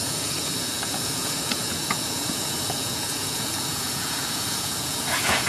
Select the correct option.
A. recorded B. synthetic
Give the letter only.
B